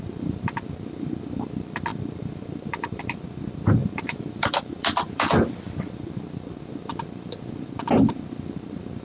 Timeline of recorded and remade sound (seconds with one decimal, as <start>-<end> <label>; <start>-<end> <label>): 0.0-9.0 remade